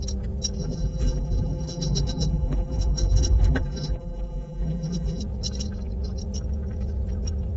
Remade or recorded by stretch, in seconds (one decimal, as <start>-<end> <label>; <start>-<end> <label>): 0.0-0.6 recorded; 0.6-5.2 remade; 5.2-7.6 recorded